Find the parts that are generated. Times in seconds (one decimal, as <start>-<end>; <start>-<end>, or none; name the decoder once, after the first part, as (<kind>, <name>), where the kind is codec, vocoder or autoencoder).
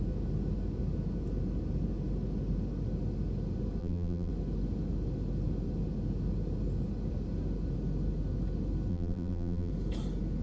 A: 3.8-4.3 (vocoder, BigVGAN v2); 8.9-9.7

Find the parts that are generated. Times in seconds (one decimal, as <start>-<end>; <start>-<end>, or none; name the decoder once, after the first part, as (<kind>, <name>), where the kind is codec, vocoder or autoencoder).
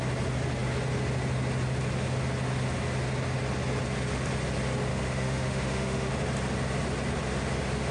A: 4.9-6.1 (autoencoder, DAC-VAE)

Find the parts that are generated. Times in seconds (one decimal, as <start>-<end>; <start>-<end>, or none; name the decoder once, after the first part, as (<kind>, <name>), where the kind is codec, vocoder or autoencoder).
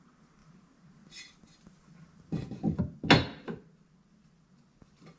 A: none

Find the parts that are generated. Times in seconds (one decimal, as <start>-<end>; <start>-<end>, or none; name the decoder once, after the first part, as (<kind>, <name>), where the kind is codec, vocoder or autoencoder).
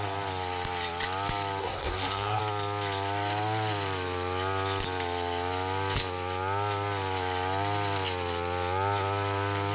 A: 1.6-2.4 (codec, SNAC)